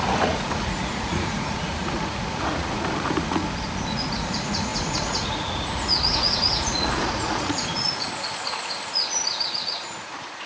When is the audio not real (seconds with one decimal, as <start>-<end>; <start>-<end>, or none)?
0.0-3.4; 3.9-10.5